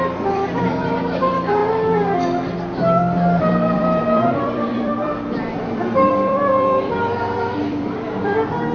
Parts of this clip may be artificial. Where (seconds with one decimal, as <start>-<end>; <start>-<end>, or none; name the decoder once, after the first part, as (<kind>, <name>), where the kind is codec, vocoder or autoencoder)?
0.0-1.6 (vocoder, BigVGAN v2); 3.4-8.7